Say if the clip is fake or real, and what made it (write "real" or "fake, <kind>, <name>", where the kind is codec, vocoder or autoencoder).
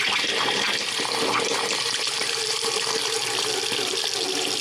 real